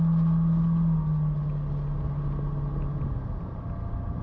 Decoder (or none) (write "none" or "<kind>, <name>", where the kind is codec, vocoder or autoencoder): none